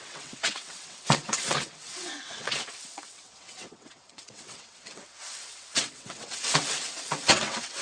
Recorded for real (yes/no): no